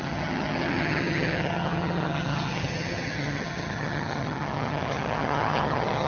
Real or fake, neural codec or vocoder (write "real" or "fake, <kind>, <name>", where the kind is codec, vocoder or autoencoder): fake, vocoder, HiFi-GAN